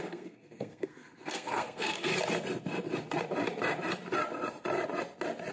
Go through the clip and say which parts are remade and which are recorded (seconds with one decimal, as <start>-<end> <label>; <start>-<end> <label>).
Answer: 0.0-2.1 remade; 2.1-5.5 recorded